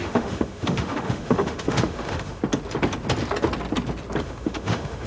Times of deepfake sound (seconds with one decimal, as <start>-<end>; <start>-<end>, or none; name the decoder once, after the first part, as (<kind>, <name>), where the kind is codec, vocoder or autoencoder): 0.0-2.4 (autoencoder, DAC-VAE); 4.2-5.1